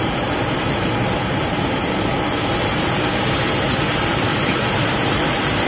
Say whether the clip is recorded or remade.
remade